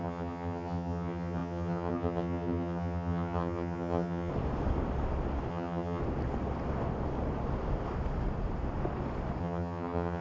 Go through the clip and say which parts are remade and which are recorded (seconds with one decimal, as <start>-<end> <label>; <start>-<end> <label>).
0.0-4.3 remade; 4.3-5.5 recorded; 5.5-6.0 remade; 6.0-9.4 recorded; 9.4-10.2 remade